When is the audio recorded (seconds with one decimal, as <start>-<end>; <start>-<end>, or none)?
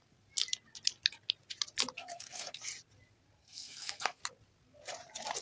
0.0-2.0; 2.6-3.4; 4.2-5.4